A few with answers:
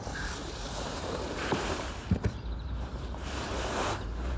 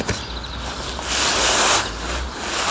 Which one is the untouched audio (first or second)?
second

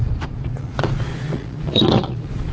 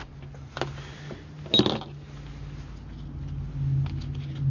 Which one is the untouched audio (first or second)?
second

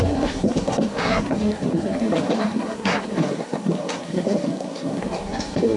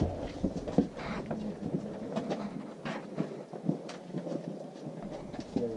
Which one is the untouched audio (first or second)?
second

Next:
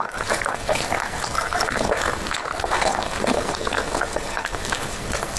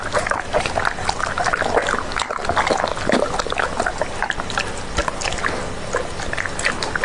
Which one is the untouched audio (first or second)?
second